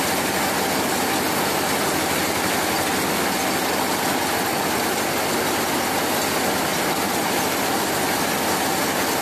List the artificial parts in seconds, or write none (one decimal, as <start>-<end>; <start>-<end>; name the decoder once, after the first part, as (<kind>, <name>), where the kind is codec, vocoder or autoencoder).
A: 6.7-7.4 (vocoder, BigVGAN v2)